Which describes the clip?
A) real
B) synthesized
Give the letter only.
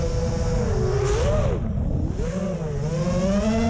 A